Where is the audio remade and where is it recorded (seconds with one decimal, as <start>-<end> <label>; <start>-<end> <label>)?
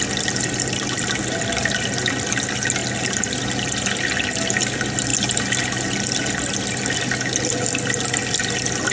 0.0-8.9 recorded